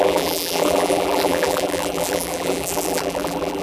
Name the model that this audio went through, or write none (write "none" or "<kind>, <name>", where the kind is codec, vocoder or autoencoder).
vocoder, BigVGAN v2